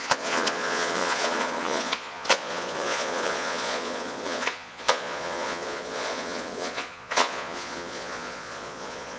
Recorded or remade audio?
remade